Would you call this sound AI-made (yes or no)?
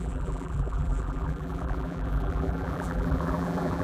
yes